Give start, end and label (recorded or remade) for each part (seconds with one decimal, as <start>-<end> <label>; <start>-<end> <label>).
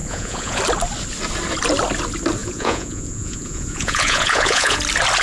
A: 0.0-0.6 remade; 0.6-2.4 recorded; 2.4-4.8 remade; 4.8-5.2 recorded